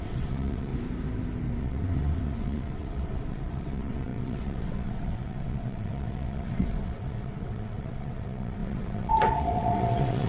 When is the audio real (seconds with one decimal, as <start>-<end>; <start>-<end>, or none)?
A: 0.7-1.6